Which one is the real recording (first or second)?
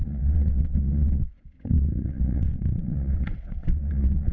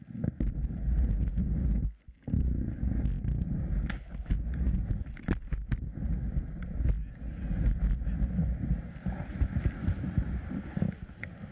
second